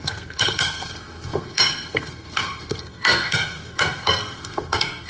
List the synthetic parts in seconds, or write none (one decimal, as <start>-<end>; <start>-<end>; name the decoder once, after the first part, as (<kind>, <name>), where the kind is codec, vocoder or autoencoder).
0.0-5.1 (codec, SNAC)